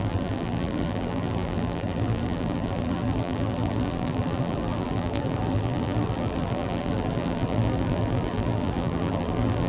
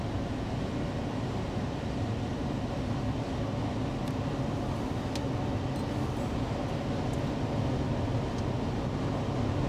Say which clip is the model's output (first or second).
first